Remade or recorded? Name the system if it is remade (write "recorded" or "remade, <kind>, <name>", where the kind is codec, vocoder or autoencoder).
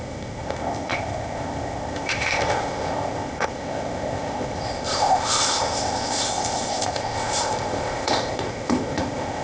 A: remade, codec, ZipCodec